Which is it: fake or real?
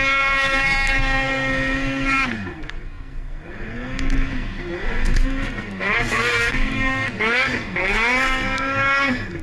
fake